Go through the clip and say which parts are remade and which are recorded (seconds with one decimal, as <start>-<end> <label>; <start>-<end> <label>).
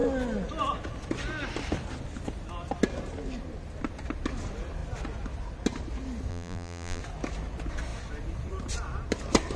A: 0.0-6.3 recorded; 6.3-7.0 remade; 7.0-9.6 recorded